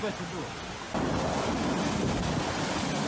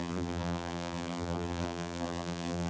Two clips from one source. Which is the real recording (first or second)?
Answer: first